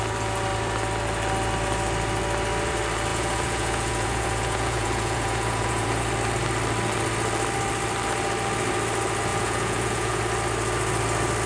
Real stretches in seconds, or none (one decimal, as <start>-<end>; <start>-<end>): 0.0-3.1; 6.0-9.3; 10.2-11.5